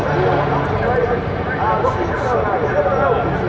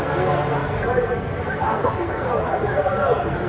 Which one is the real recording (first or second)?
first